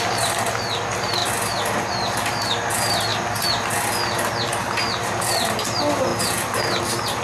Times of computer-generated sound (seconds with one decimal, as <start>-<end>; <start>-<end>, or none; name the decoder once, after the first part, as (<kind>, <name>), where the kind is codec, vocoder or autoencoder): none